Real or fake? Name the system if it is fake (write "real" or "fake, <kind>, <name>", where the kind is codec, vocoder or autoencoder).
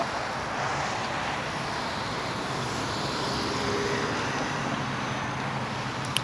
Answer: real